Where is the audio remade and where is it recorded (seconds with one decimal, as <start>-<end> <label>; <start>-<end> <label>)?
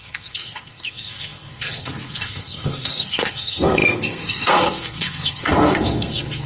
0.0-6.5 remade